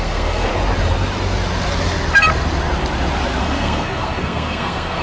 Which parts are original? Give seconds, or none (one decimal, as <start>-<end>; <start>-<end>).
0.5-3.4